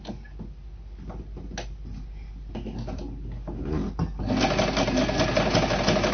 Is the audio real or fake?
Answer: real